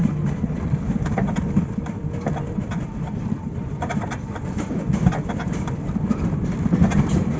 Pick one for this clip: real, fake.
fake